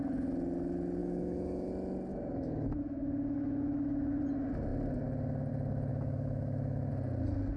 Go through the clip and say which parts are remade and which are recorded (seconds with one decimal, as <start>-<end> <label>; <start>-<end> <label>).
0.0-1.0 recorded; 1.0-1.7 remade; 1.7-2.1 recorded; 2.1-4.2 remade; 4.2-5.9 recorded; 5.9-6.9 remade; 6.9-7.6 recorded